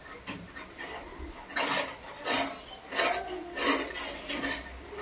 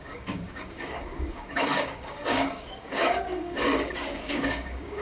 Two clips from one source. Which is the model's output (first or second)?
second